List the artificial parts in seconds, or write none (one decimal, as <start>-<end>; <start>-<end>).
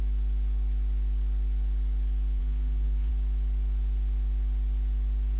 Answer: 2.4-3.1